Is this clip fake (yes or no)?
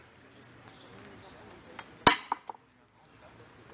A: no